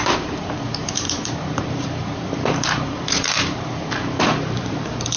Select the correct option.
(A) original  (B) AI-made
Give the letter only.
B